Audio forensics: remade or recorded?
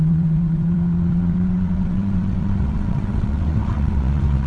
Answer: remade